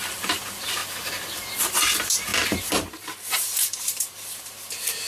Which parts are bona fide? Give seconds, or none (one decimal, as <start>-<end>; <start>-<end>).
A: 0.8-1.6